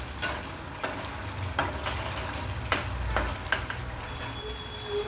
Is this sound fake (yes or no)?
no